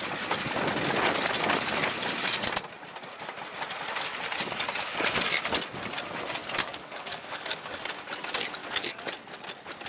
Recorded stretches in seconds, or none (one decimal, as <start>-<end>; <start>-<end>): 0.0-6.6; 7.9-8.6; 9.1-9.9